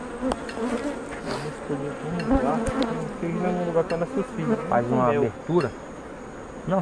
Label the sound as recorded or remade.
recorded